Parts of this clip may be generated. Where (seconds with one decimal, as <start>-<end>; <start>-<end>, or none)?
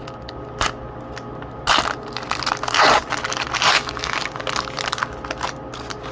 3.7-4.2